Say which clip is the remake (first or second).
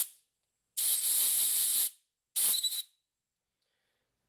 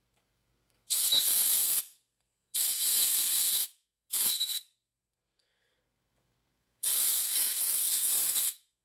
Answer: second